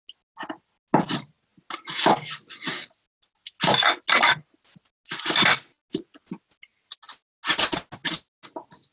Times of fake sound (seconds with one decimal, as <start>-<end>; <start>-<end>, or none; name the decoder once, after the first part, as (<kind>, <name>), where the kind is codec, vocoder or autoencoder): none